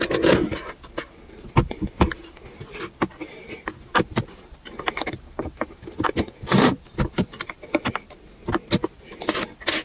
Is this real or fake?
real